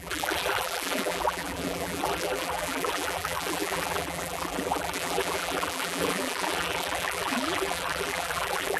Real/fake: fake